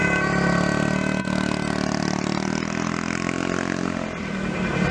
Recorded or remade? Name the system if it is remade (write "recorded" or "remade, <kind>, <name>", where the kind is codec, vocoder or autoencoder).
recorded